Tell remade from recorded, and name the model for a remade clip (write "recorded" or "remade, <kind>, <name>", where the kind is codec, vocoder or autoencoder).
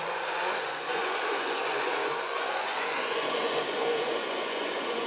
remade, vocoder, Vocos